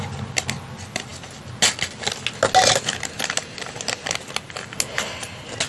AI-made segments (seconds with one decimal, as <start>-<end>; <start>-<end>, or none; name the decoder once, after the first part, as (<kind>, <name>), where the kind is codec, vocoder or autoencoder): none